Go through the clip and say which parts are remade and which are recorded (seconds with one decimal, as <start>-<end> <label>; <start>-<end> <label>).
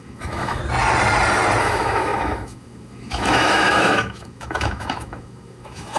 0.0-0.6 remade; 0.6-1.6 recorded; 1.6-6.0 remade